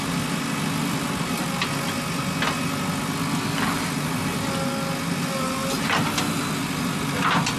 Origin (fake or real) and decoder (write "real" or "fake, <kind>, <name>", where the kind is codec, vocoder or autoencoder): real